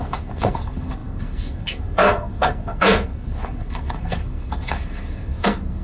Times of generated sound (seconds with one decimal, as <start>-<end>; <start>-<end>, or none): 0.0-5.8